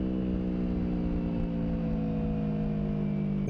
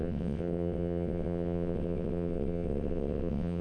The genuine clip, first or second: first